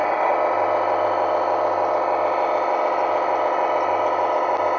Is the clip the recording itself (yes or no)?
yes